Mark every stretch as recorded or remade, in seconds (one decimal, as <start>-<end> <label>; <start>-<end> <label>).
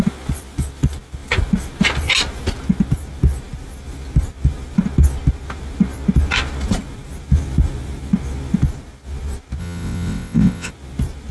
0.0-9.6 recorded; 9.6-10.7 remade; 10.7-11.3 recorded